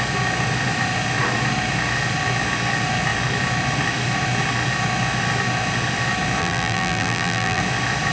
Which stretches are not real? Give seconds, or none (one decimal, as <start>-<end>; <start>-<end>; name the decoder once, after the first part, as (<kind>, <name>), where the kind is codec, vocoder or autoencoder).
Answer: 6.4-7.6 (vocoder, BigVGAN v2)